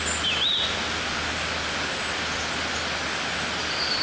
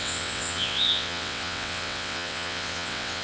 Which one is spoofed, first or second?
second